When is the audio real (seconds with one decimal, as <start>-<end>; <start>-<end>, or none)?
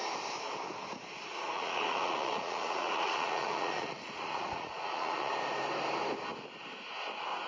0.0-1.3; 5.3-7.5